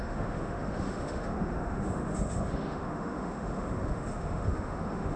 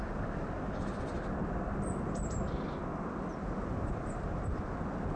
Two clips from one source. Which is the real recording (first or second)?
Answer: second